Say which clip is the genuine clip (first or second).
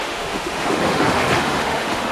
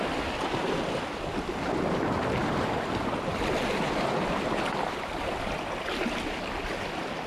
second